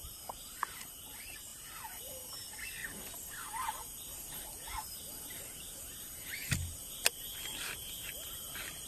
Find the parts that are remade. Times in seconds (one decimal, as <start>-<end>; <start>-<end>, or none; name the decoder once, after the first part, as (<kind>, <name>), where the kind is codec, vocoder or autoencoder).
0.0-2.8 (vocoder, BigVGAN v2); 5.2-6.4; 7.4-8.9